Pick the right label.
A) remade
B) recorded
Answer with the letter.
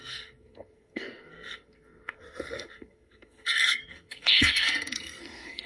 A